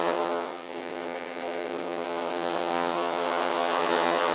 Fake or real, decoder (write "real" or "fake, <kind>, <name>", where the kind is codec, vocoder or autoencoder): fake, vocoder, HiFi-GAN